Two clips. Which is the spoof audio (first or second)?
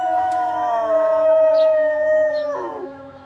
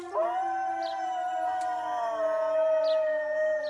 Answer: first